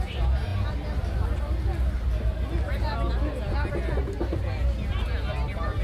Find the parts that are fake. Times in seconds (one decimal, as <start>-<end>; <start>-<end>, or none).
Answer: none